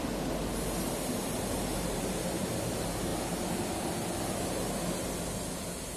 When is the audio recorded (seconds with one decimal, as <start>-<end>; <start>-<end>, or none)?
0.0-1.2; 2.5-6.0

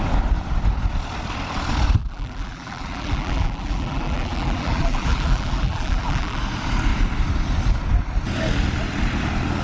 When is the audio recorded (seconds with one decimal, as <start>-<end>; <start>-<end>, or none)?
0.0-2.0; 6.4-9.6

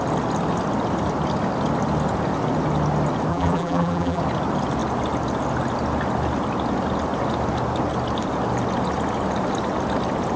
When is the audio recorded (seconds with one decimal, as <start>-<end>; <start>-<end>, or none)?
0.0-3.3; 4.2-10.4

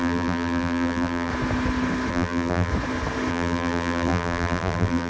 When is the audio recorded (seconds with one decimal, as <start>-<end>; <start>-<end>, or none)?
1.3-2.1; 2.7-3.3

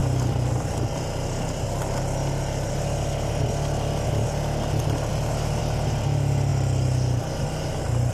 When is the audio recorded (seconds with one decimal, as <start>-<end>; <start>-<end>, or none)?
0.0-8.1

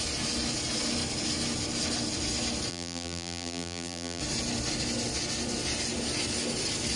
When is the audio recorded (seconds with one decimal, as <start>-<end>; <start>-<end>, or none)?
0.0-2.7; 4.2-7.0